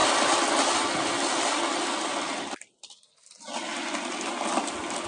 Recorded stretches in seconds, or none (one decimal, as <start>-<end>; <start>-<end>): 0.0-5.1